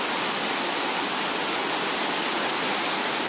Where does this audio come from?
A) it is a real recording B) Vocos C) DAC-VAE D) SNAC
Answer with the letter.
A